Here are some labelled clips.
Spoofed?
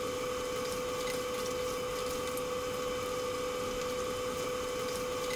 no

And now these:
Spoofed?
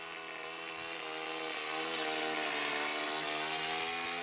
no